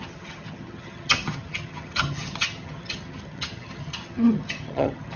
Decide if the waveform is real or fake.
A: fake